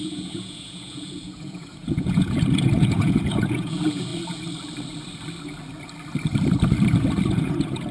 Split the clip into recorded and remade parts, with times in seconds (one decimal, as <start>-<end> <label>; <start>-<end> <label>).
0.0-4.1 remade; 4.1-7.3 recorded; 7.3-7.9 remade